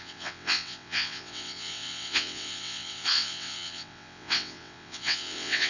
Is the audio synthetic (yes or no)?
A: yes